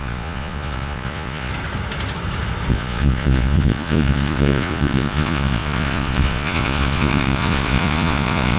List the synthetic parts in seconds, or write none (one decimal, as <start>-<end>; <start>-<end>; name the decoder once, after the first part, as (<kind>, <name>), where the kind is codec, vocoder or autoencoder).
0.0-1.5 (vocoder, Vocos); 2.7-8.6